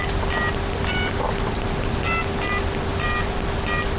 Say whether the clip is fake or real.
real